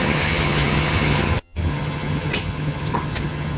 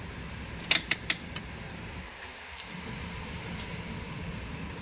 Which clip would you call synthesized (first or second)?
first